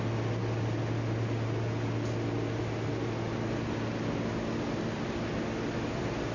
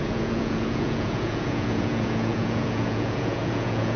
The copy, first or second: second